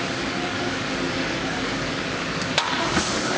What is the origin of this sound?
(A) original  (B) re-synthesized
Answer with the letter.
B